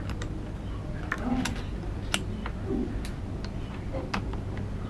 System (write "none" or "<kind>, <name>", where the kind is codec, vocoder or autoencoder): none